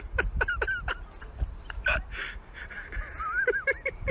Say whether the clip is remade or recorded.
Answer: recorded